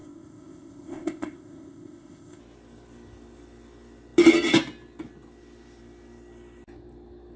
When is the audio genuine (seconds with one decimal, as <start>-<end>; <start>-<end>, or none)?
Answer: 2.4-7.4